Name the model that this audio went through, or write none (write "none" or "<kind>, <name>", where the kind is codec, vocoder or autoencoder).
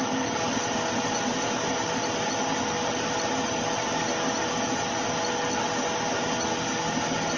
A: none